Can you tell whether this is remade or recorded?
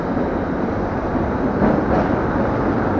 recorded